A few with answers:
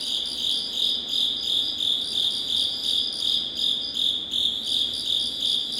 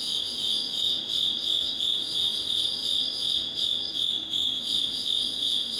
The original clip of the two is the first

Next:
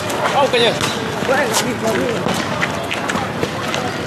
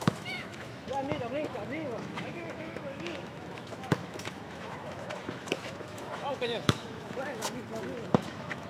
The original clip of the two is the first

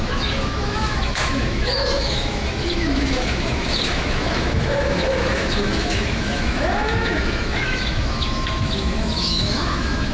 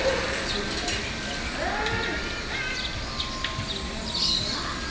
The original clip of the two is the second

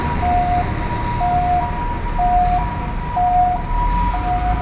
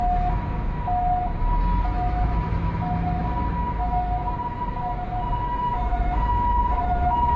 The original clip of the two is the first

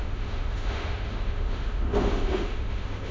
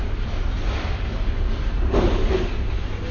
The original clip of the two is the second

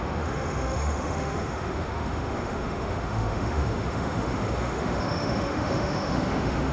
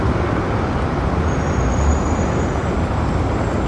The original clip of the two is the second